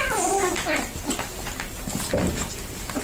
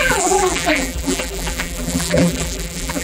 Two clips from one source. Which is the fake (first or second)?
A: second